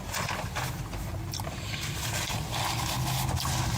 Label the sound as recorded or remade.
recorded